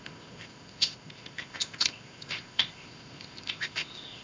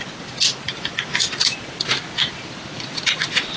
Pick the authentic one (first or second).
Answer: second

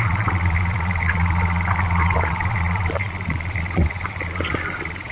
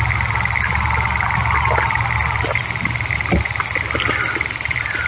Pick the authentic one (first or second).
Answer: second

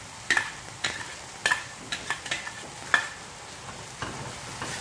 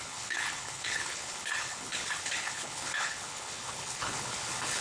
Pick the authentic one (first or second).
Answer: first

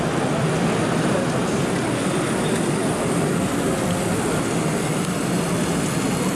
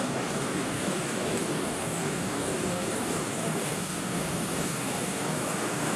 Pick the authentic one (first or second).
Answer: first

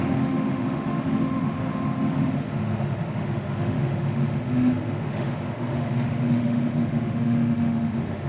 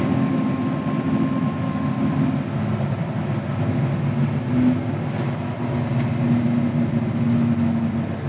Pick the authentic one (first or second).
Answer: second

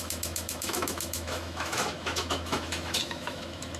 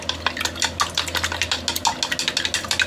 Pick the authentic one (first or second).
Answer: second